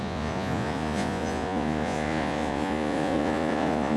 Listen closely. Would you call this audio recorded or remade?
remade